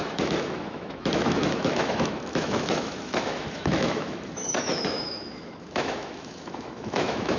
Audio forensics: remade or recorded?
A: remade